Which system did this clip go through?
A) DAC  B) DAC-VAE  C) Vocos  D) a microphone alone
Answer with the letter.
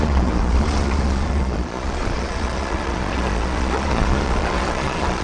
C